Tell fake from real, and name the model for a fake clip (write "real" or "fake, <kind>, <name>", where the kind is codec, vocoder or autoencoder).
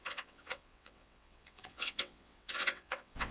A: fake, vocoder, WaveNeXt